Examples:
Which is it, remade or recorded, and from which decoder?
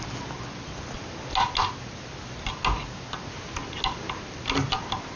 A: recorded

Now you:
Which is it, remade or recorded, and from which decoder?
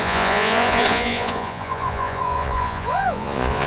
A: remade, vocoder, Vocos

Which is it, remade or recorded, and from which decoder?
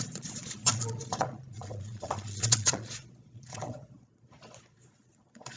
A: remade, vocoder, Vocos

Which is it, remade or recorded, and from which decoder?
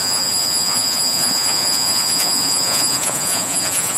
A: remade, vocoder, Vocos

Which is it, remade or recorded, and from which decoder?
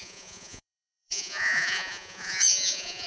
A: remade, vocoder, Vocos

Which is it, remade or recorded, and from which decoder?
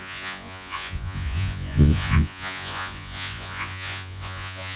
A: remade, vocoder, Vocos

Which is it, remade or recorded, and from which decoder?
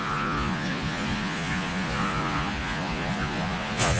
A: remade, vocoder, Vocos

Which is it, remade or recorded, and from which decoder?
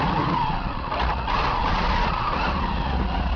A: remade, vocoder, Vocos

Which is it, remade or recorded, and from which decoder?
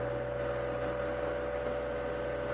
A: recorded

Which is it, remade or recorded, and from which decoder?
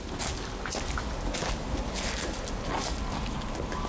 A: recorded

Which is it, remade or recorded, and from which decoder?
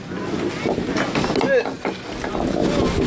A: recorded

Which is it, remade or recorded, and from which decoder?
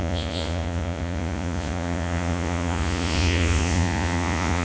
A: remade, vocoder, Vocos